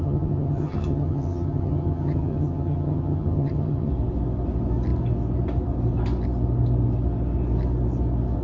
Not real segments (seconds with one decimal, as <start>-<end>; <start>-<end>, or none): 0.0-3.9